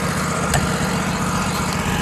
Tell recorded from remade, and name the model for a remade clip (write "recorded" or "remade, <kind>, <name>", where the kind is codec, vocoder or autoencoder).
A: recorded